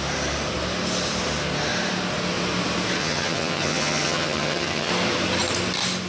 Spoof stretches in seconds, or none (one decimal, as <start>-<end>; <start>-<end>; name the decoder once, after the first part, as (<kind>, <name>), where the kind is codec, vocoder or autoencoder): 3.0-4.9 (vocoder, HiFi-GAN)